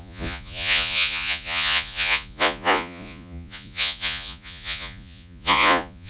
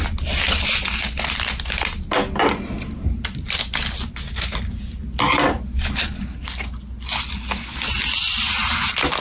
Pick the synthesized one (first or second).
first